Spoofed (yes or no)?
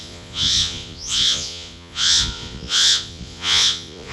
yes